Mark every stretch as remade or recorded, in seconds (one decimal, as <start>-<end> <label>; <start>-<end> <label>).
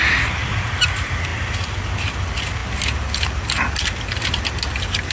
0.0-5.1 recorded